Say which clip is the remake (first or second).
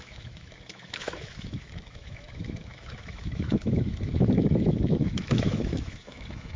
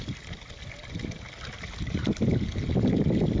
first